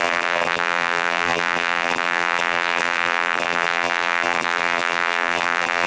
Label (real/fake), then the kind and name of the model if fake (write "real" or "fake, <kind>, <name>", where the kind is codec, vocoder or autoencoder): fake, vocoder, BigVGAN v2